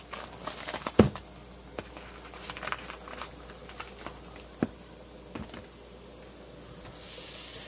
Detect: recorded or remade recorded